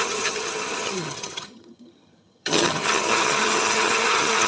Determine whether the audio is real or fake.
fake